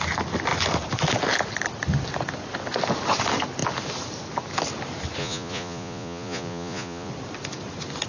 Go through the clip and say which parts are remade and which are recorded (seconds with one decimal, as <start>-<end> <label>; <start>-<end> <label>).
0.0-5.2 recorded; 5.2-7.1 remade; 7.1-8.1 recorded